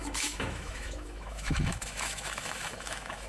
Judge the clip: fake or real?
fake